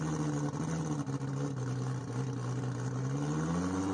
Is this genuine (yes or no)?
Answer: yes